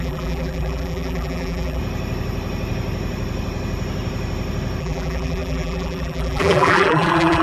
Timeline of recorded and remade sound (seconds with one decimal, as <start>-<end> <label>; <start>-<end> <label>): 0.0-1.8 remade; 1.8-4.8 recorded; 4.8-7.4 remade